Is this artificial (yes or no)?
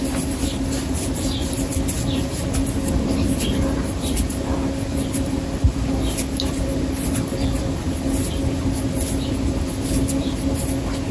no